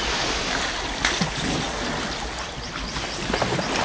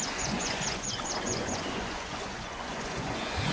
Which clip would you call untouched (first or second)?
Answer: first